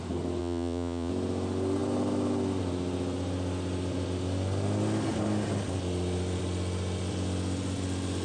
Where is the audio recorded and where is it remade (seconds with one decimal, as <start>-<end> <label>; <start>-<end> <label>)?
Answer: 0.0-0.4 recorded; 0.4-1.1 remade; 1.1-8.2 recorded